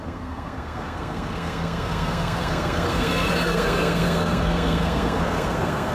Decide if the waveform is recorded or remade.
remade